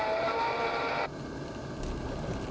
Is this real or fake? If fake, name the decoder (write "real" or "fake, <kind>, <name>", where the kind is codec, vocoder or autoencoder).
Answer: real